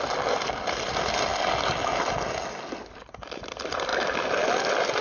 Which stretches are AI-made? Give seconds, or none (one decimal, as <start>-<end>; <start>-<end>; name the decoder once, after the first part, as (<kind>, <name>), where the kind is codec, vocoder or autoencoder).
none